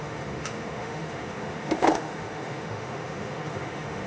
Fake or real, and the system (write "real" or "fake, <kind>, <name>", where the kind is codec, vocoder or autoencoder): fake, autoencoder, DAC-VAE